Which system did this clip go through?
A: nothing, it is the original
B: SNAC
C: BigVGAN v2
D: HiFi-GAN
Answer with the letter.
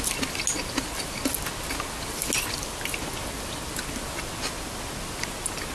A